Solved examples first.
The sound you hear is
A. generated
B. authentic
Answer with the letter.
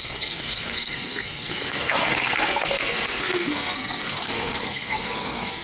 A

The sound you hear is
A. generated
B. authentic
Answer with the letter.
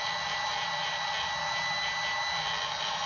B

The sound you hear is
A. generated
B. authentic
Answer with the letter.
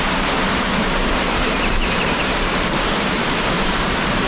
A